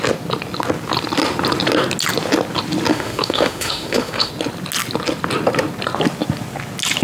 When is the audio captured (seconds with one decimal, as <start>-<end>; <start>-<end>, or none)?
0.0-2.9; 4.3-7.0